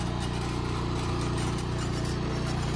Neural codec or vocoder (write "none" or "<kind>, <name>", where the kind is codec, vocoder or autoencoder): none